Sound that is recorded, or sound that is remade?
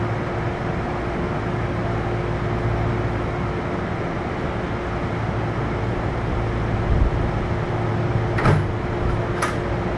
recorded